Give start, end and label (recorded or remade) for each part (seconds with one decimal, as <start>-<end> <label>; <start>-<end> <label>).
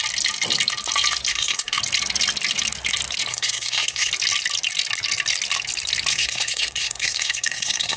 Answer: 0.0-1.3 recorded; 1.3-1.8 remade; 1.8-3.3 recorded; 3.3-4.1 remade; 4.1-6.1 recorded; 6.1-8.0 remade